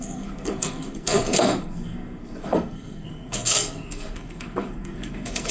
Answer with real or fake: fake